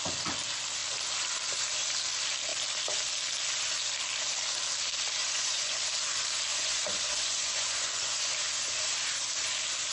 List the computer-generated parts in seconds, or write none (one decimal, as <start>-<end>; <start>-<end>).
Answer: 5.2-5.8; 6.5-8.3